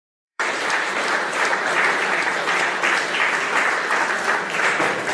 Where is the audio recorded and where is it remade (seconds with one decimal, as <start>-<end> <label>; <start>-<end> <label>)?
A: 0.0-1.5 remade; 1.5-4.6 recorded; 4.6-5.1 remade